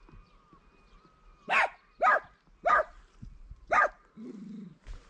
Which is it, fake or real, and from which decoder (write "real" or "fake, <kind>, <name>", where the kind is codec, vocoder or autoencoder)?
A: real